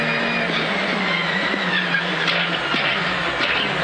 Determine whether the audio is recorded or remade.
recorded